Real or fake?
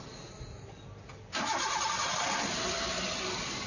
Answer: real